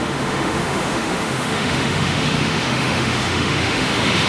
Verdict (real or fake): fake